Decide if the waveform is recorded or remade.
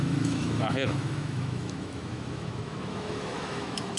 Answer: remade